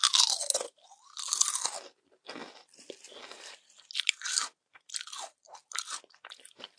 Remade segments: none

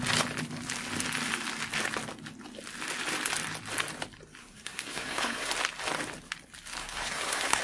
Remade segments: 4.4-5.5 (codec, SNAC); 6.8-7.6

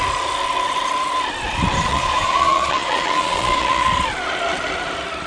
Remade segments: 1.9-3.9 (vocoder, Vocos)